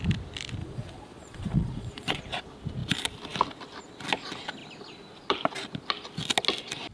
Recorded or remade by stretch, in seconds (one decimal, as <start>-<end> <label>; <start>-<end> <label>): 0.0-0.6 recorded; 0.6-2.2 remade; 2.2-6.9 recorded